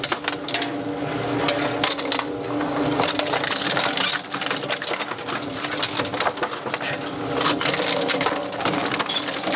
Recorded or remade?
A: recorded